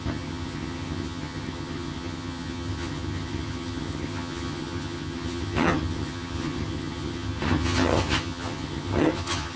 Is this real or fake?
fake